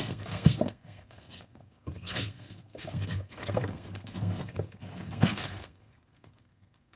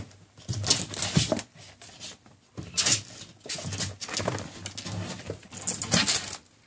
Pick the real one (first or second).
second